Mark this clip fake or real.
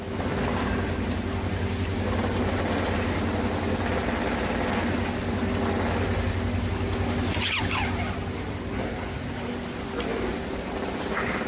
real